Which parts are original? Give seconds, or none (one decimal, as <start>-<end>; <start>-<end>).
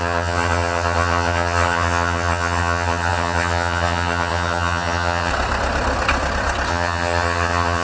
5.3-6.7